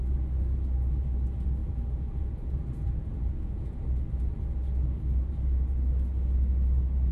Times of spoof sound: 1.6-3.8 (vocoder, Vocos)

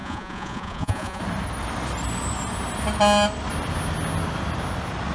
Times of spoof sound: 0.0-1.2 (vocoder, Vocos)